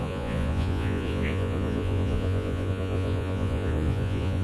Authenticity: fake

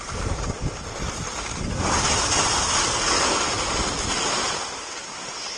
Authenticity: real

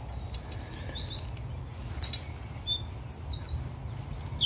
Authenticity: real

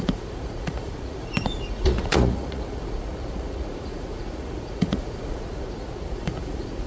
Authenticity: fake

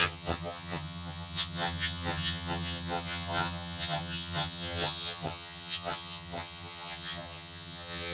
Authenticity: fake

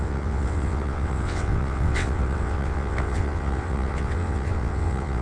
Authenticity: fake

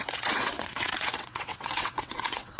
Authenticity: fake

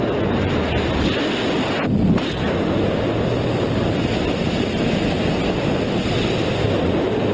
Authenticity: real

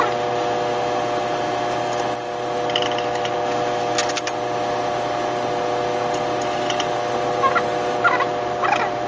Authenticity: real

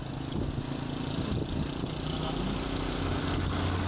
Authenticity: real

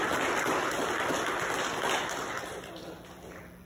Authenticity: real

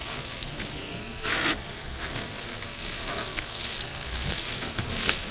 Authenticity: fake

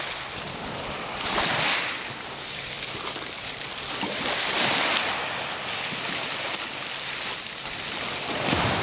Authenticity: real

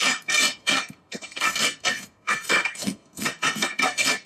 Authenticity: fake